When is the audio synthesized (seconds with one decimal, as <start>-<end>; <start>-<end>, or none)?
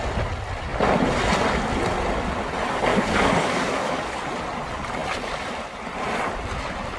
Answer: 2.9-4.2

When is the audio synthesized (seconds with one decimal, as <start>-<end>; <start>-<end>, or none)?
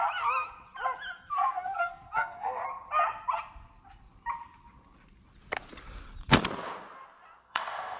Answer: 1.2-2.6; 7.4-8.0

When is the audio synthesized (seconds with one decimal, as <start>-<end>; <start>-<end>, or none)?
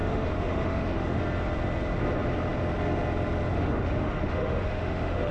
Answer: 0.0-1.2; 3.5-5.3